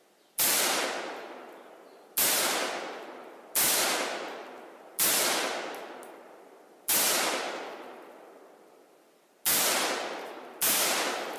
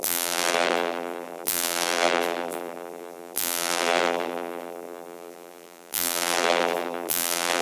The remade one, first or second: second